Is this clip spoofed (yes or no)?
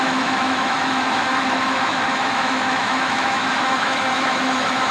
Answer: yes